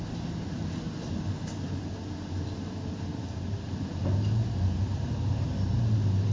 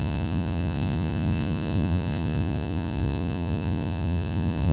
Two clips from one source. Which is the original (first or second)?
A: first